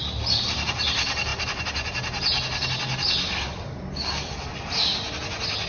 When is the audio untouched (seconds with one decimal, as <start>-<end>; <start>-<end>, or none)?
0.0-5.7